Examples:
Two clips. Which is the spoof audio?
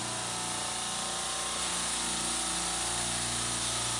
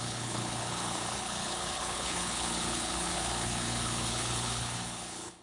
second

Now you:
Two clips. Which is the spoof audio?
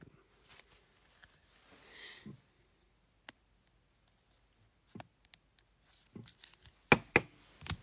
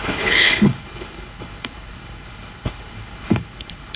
second